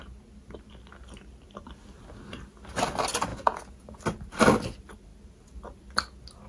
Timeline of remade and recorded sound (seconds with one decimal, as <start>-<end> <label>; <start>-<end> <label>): 0.0-3.3 recorded; 3.3-4.0 remade; 4.0-6.5 recorded